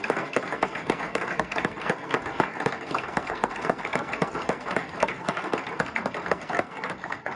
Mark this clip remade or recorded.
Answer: remade